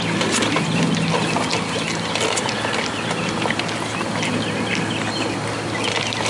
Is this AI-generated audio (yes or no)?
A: no